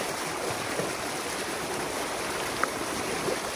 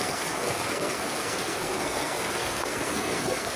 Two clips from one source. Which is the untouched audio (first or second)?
first